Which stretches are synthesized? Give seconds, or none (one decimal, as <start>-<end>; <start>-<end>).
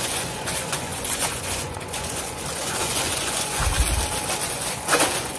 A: 0.0-3.6; 4.4-5.4